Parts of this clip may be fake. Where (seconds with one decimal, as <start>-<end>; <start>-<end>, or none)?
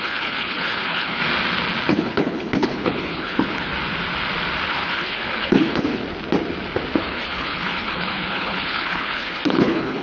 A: 0.0-1.2; 1.9-3.7; 4.7-6.0; 7.0-10.0